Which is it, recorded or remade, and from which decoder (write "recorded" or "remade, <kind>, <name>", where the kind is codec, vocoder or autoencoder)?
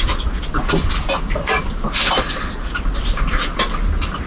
recorded